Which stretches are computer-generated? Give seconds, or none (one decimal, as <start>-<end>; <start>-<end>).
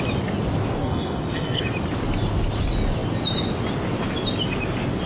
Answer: 0.8-1.6